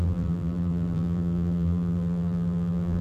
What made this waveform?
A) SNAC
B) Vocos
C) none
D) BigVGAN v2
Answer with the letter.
D